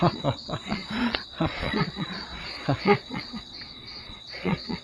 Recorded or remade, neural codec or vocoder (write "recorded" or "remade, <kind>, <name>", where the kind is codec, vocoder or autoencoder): remade, vocoder, Vocos